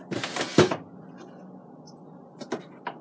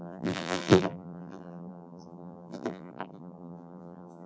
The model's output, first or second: second